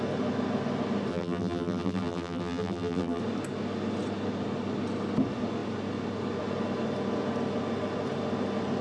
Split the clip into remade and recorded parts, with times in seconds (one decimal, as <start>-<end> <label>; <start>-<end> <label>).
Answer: 0.0-1.1 recorded; 1.1-3.2 remade; 3.2-8.8 recorded